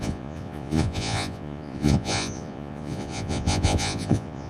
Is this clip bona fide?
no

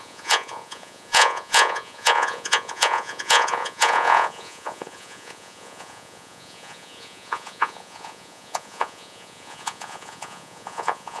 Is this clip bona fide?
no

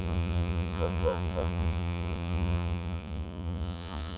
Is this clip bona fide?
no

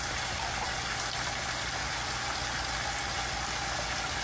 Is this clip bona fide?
yes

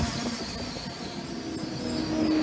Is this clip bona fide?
yes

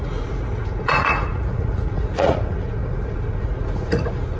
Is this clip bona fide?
no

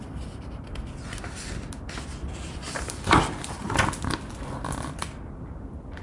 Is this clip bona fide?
yes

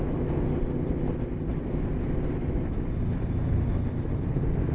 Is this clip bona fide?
yes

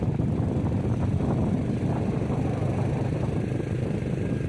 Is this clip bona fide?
yes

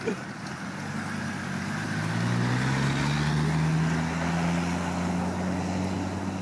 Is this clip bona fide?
yes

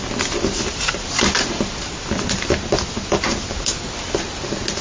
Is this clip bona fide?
yes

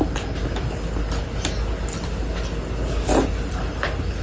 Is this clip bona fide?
yes